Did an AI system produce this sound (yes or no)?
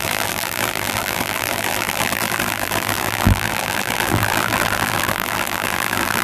yes